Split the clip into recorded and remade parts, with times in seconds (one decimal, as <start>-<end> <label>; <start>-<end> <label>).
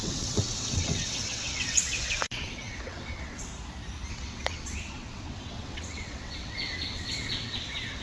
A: 0.0-3.5 remade; 3.5-4.1 recorded; 4.1-8.0 remade